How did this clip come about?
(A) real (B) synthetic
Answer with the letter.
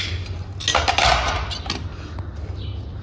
A